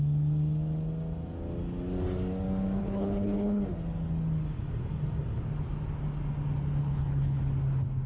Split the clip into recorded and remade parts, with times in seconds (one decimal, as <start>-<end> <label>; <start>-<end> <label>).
0.0-2.8 recorded; 2.8-3.6 remade; 3.6-6.8 recorded; 6.8-7.4 remade; 7.4-8.1 recorded